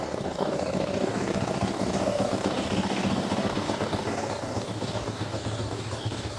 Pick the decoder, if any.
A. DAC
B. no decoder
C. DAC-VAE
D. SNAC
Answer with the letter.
A